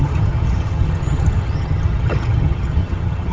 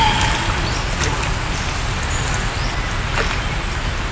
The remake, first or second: first